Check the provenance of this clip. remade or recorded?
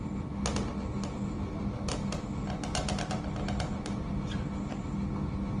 recorded